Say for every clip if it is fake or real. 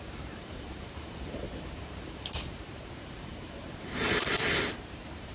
fake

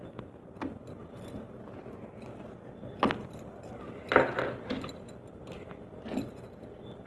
real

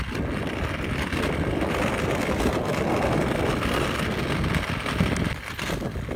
real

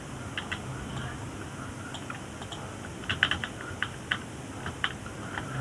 real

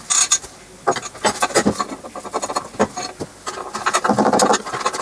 real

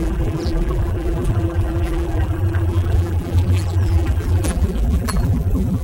fake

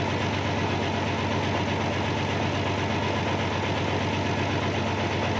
real